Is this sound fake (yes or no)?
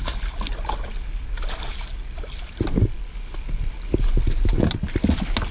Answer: no